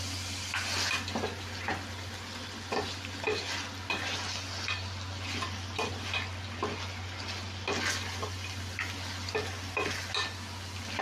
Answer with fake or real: real